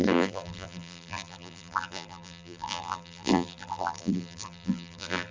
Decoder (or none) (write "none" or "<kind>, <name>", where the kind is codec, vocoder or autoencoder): vocoder, BigVGAN v2